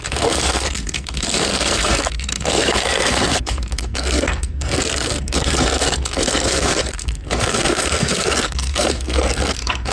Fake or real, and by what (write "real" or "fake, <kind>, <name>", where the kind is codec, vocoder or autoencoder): fake, codec, SNAC